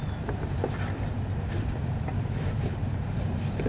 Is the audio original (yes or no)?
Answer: no